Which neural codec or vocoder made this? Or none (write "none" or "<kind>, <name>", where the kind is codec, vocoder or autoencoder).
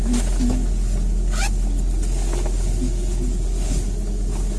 none